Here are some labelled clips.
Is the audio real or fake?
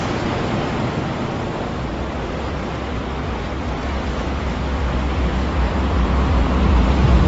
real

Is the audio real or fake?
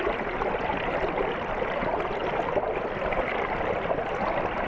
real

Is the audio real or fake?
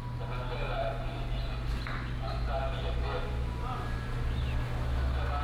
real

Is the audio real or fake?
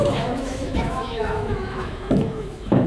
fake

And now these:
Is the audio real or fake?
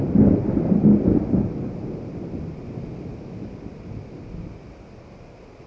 real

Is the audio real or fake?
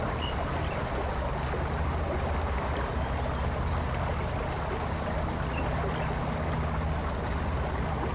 real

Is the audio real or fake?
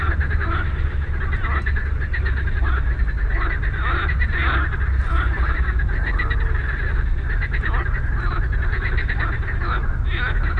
real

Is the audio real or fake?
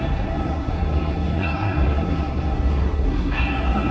fake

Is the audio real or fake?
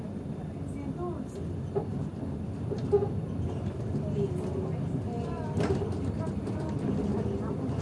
real